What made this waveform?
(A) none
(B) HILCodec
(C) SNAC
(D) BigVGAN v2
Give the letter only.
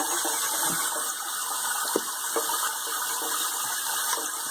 D